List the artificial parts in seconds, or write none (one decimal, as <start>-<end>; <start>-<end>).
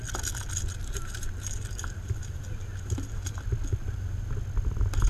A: 0.8-3.4; 3.8-4.3